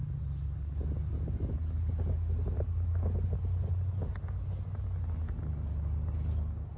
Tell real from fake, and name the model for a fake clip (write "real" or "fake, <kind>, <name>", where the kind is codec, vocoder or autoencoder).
real